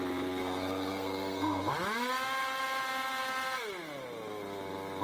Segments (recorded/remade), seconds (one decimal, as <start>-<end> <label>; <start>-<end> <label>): 0.0-0.4 recorded; 0.4-1.7 remade; 1.7-5.0 recorded